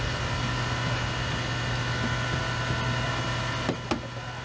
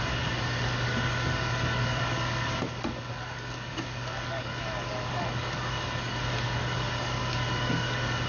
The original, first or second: first